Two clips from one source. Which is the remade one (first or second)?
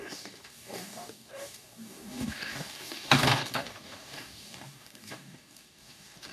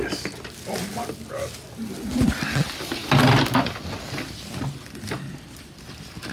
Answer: first